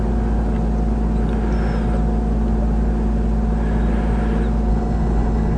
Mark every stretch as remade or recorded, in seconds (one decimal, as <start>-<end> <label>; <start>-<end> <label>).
0.0-4.7 recorded; 4.7-5.6 remade